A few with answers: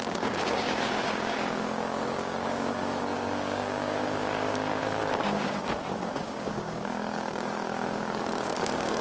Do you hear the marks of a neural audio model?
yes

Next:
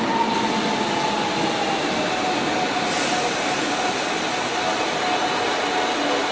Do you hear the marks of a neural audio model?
no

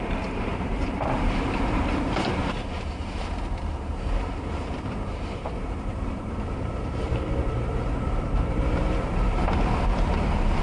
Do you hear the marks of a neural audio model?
yes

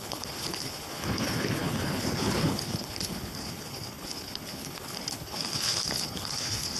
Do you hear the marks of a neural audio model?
yes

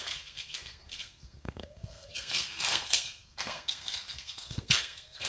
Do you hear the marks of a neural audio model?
yes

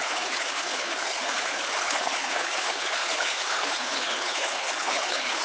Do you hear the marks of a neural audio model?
yes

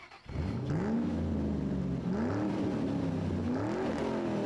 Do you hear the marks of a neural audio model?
no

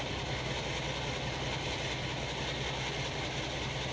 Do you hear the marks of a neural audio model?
yes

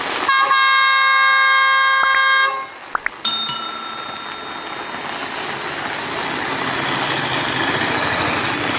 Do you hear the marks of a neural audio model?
no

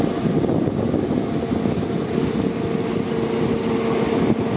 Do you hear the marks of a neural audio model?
no